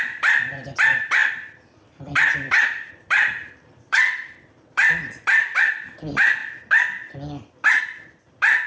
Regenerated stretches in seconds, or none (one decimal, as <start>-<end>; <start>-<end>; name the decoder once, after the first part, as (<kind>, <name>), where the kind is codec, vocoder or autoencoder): 0.0-6.4 (vocoder, BigVGAN v2); 7.8-8.7